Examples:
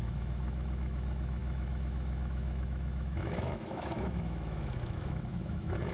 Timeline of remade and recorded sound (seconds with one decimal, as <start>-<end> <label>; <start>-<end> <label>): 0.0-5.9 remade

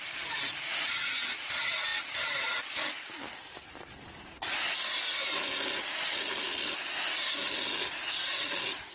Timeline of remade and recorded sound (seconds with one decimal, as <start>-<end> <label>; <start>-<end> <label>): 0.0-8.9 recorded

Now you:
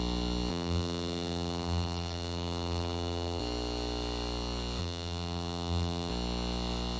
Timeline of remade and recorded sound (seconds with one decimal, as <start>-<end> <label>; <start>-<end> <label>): 0.0-0.5 recorded; 0.5-3.4 remade; 3.4-4.8 recorded; 4.8-6.1 remade; 6.1-7.0 recorded

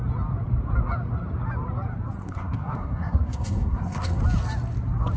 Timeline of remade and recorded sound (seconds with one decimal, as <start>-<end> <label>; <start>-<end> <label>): 0.0-2.2 recorded; 2.2-4.2 remade; 4.2-5.2 recorded

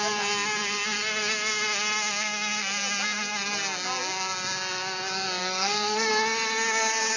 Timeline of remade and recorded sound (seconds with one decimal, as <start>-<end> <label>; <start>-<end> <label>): 0.0-5.4 recorded; 5.4-6.1 remade; 6.1-7.2 recorded

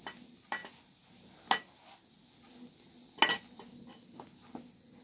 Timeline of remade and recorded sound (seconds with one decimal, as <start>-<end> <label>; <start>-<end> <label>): 0.0-5.0 recorded

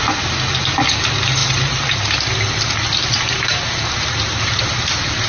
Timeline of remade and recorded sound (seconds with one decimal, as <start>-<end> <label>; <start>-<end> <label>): 0.0-1.4 recorded; 1.4-4.6 remade; 4.6-5.3 recorded